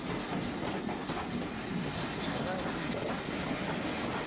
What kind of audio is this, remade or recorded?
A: recorded